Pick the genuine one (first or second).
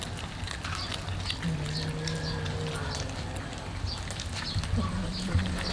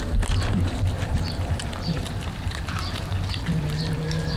first